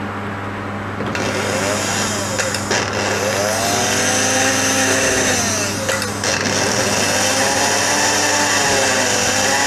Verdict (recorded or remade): recorded